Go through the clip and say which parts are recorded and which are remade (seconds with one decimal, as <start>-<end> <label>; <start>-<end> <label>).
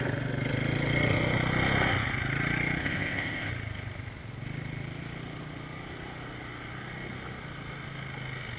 0.0-2.8 recorded; 2.8-3.5 remade; 3.5-8.6 recorded